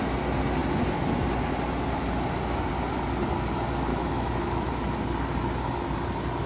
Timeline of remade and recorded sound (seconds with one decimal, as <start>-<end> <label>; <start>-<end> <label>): 0.0-3.9 recorded; 3.9-4.7 remade; 4.7-6.5 recorded